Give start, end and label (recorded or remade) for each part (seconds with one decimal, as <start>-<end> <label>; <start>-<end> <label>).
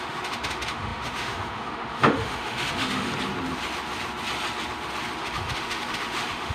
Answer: 0.0-3.1 remade; 3.1-5.2 recorded; 5.2-6.5 remade